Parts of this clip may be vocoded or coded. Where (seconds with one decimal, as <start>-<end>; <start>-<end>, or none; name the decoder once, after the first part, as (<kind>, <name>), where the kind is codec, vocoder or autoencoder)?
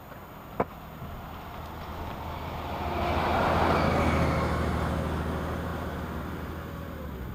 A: none